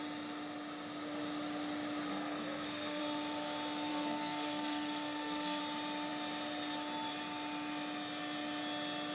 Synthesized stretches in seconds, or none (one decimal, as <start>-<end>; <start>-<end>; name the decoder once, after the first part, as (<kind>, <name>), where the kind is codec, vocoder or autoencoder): 2.1-3.0 (codec, SNAC); 3.9-5.6